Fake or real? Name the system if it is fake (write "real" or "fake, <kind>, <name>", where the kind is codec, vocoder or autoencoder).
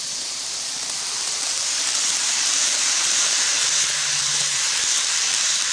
fake, vocoder, BigVGAN v2